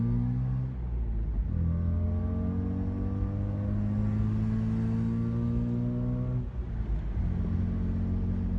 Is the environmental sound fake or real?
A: real